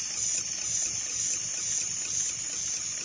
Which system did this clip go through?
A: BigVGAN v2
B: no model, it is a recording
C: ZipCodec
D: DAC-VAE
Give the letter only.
B